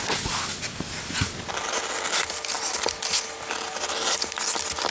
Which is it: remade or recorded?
recorded